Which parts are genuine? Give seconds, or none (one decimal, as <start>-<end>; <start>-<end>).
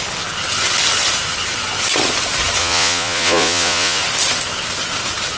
0.0-2.6; 4.0-5.4